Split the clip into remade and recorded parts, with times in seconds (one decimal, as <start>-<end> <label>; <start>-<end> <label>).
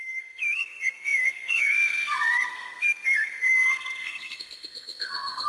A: 0.0-5.5 remade